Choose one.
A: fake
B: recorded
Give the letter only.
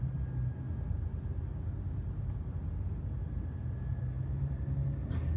B